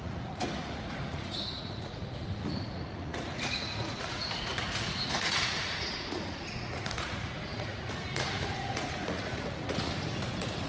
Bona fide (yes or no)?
no